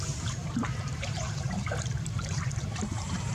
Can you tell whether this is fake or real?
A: fake